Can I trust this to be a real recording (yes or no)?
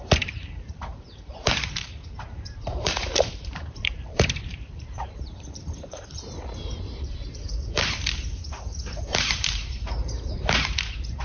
no